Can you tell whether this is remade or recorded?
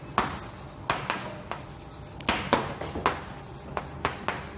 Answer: recorded